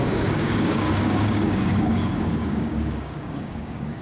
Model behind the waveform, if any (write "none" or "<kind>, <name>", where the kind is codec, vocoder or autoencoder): codec, DAC